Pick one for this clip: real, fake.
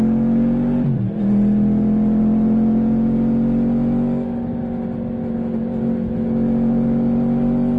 real